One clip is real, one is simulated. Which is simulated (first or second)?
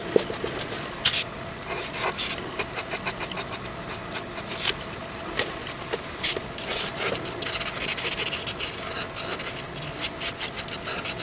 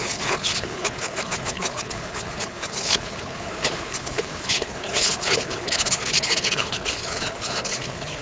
second